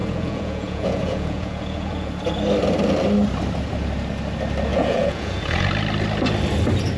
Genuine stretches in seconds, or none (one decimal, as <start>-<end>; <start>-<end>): 2.1-4.7; 5.7-7.0